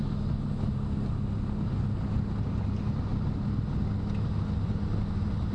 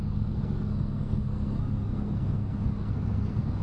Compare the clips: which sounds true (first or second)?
first